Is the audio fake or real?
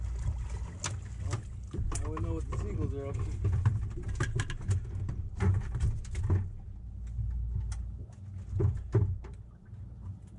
real